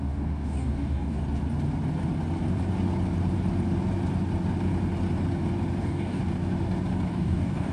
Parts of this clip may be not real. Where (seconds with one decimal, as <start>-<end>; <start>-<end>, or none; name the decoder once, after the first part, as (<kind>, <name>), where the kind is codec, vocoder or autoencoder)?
0.0-1.2 (codec, DAC); 5.8-6.2; 7.1-7.7